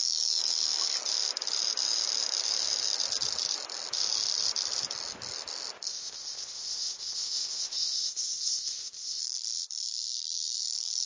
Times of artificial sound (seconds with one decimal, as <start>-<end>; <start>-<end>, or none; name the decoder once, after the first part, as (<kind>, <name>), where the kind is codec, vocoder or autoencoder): 5.9-9.2 (codec, ZipCodec)